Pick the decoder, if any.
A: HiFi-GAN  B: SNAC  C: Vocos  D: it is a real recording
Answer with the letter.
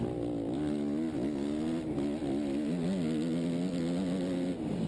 D